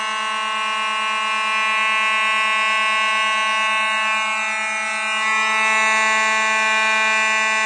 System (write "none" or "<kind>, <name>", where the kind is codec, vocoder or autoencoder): none